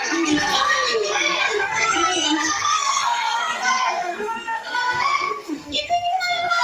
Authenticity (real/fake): fake